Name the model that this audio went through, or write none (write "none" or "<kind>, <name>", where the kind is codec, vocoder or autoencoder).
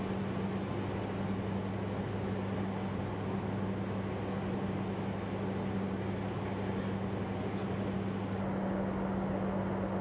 none